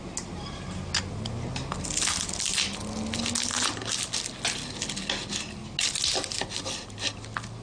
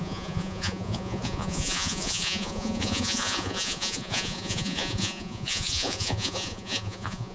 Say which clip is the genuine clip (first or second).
first